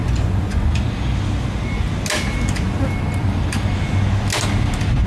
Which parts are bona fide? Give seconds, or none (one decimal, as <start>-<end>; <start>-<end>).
0.9-5.1